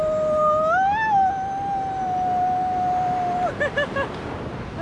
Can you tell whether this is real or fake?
real